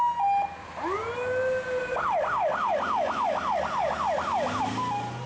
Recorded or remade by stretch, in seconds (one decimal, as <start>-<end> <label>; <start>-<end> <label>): 0.0-5.3 recorded